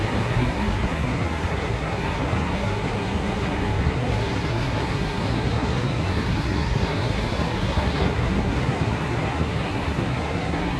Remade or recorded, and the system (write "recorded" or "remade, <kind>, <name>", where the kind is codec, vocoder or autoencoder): remade, codec, SNAC